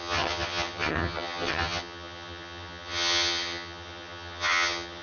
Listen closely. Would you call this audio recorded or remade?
remade